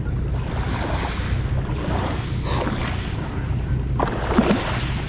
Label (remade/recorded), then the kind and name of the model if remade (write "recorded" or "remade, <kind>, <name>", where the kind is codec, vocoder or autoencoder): recorded